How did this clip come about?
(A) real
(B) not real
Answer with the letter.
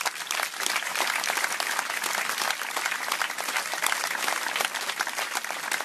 A